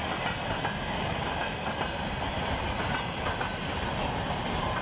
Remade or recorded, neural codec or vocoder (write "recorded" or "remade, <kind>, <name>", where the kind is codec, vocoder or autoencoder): recorded